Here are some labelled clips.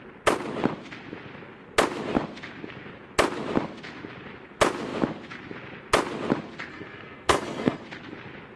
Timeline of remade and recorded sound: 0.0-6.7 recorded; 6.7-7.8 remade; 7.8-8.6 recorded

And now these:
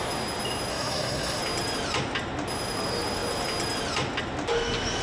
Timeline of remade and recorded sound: 0.0-0.7 recorded; 0.7-1.4 remade; 1.4-5.0 recorded

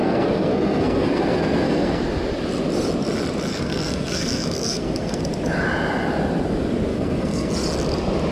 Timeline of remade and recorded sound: 0.0-2.0 remade; 2.0-3.5 recorded; 3.5-5.2 remade; 5.2-6.9 recorded; 6.9-7.5 remade; 7.5-8.3 recorded

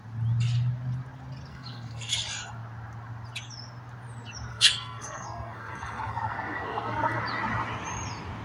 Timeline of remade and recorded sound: 0.0-1.5 recorded; 1.5-2.1 remade; 2.1-4.5 recorded; 4.5-7.2 remade; 7.2-8.4 recorded

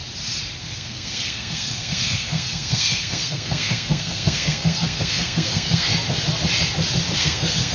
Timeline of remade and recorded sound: 0.0-0.6 recorded; 0.6-5.9 remade; 5.9-7.2 recorded; 7.2-7.7 remade

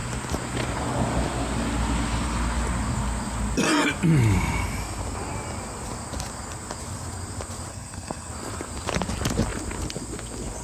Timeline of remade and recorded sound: 0.0-7.7 recorded; 7.7-8.3 remade; 8.3-10.6 recorded